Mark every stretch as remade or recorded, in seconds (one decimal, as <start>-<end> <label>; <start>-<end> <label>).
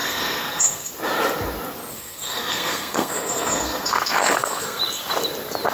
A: 0.0-0.9 remade; 0.9-1.9 recorded; 1.9-4.8 remade; 4.8-5.7 recorded